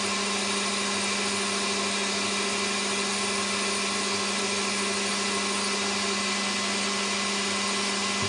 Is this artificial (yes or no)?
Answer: no